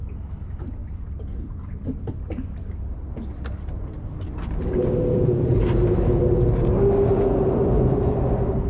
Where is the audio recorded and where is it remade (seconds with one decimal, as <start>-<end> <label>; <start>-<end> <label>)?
0.0-8.7 recorded